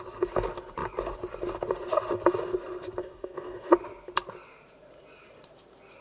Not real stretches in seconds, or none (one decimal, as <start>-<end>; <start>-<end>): 3.0-3.7